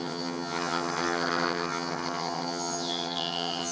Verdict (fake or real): fake